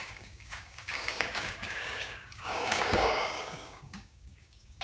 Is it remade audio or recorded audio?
remade